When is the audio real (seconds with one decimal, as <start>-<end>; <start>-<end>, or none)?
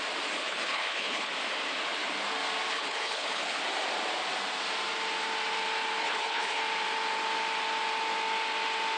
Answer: 0.0-0.4; 1.3-2.7; 3.6-6.0; 6.6-9.0